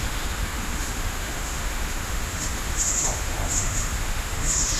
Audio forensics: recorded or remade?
remade